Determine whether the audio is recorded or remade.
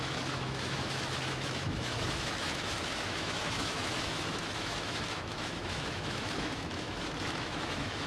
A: remade